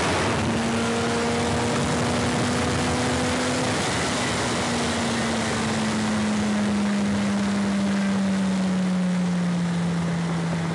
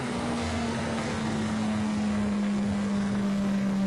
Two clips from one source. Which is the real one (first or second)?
first